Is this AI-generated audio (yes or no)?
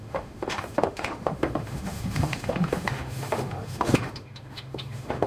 yes